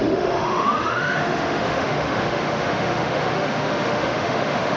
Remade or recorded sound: remade